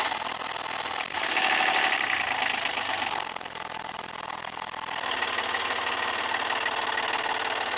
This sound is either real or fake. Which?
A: real